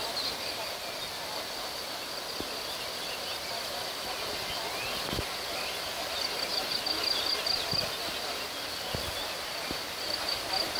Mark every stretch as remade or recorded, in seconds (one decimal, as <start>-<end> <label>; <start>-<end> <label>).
0.0-10.8 recorded